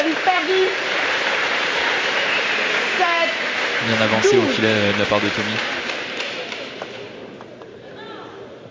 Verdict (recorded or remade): remade